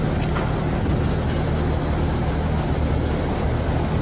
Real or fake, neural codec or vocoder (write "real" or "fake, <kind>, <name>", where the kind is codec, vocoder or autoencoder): real